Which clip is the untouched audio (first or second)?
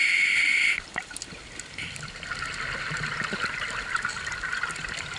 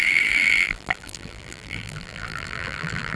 first